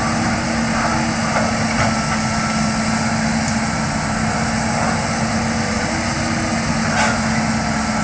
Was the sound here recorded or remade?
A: recorded